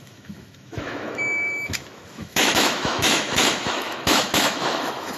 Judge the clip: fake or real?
fake